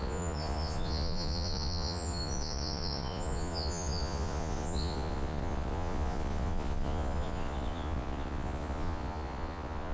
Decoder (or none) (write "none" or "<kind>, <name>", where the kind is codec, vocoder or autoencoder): vocoder, Vocos